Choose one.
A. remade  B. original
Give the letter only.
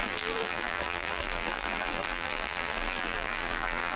A